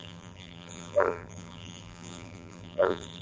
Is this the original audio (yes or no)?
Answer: no